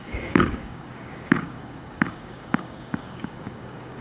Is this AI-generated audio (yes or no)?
yes